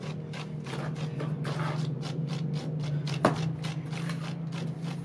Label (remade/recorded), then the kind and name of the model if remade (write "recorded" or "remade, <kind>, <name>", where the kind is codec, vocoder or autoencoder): recorded